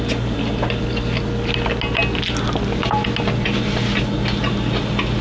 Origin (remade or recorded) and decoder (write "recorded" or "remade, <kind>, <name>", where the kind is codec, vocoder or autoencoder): recorded